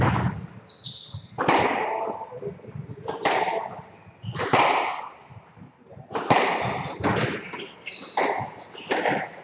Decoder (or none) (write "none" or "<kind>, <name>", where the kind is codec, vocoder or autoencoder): none